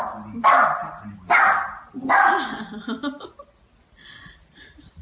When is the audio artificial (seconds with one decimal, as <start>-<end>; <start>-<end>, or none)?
none